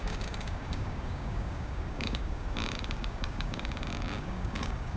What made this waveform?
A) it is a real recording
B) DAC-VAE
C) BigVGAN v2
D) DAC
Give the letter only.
D